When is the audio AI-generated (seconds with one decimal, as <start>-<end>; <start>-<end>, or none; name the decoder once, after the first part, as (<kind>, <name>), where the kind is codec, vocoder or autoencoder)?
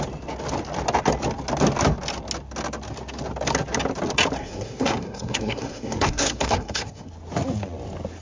4.4-7.1 (codec, SNAC)